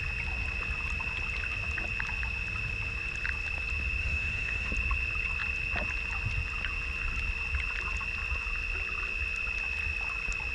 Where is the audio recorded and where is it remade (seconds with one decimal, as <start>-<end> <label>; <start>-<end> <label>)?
0.0-4.0 recorded; 4.0-4.7 remade; 4.7-10.5 recorded